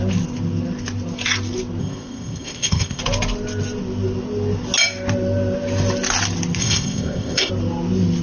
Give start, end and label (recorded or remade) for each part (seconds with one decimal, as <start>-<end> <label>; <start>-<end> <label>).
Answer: 0.0-1.8 recorded; 1.8-3.0 remade; 3.0-6.6 recorded; 6.6-7.5 remade; 7.5-8.2 recorded